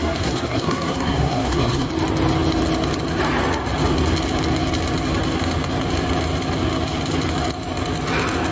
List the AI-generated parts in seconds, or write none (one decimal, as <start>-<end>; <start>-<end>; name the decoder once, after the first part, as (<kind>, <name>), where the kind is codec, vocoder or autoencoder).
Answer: 0.0-1.9 (codec, SNAC)